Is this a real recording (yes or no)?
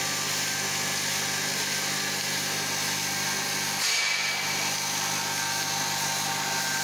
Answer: yes